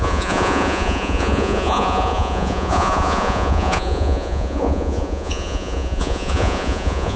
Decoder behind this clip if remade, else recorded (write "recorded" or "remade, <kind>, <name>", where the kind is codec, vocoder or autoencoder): remade, vocoder, Vocos